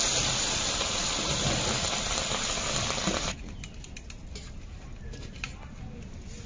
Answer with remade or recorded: recorded